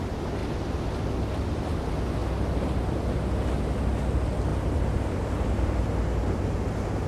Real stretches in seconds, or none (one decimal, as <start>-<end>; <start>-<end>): 0.0-4.5; 6.4-7.1